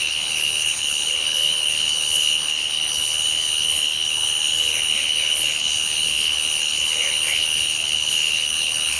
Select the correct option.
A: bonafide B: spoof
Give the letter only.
B